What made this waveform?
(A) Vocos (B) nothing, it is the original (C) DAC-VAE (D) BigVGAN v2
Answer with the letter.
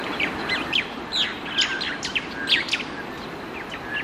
B